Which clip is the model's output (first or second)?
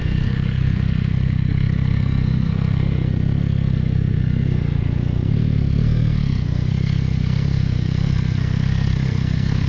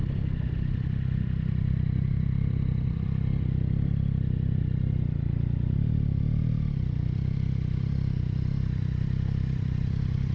first